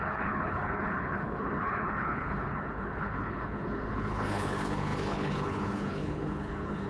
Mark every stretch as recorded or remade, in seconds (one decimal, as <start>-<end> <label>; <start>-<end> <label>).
0.0-6.9 remade